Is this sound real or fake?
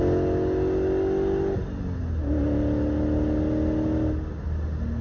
real